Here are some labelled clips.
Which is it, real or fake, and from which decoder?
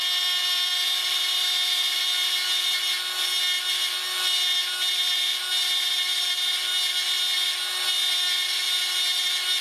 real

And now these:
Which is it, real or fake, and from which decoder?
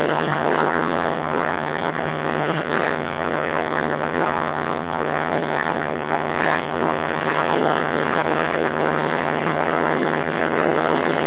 fake, vocoder, HiFi-GAN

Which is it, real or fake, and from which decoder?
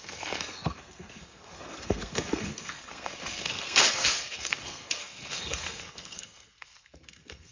fake, codec, SNAC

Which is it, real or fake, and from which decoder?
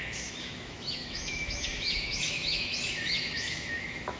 fake, autoencoder, DAC-VAE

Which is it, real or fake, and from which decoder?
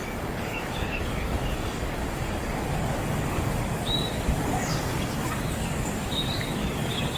fake, codec, DAC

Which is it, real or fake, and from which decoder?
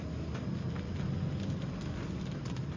real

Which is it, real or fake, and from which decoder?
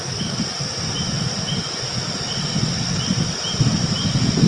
real